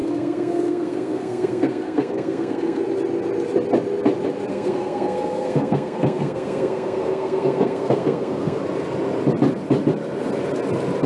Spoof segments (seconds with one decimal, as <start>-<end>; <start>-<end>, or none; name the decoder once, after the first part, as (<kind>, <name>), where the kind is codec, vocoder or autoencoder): 0.0-2.8 (codec, SNAC); 4.5-8.6